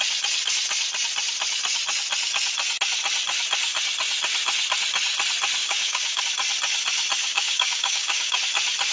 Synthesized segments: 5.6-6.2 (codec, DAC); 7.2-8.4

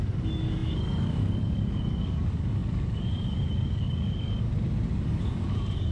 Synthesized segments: 0.0-4.5 (codec, DAC); 5.0-5.9

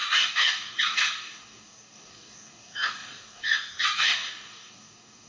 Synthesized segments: 0.0-5.3 (codec, DAC)

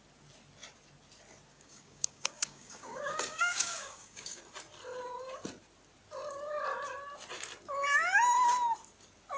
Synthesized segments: 1.5-4.4 (codec, DAC)

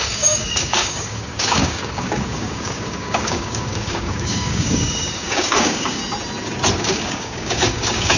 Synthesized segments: 0.0-6.0 (codec, DAC); 6.8-8.2

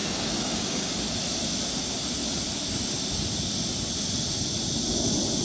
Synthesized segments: 0.0-0.9 (codec, DAC)

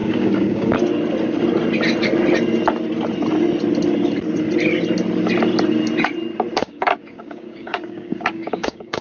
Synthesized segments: 0.0-0.8 (codec, DAC); 6.6-9.0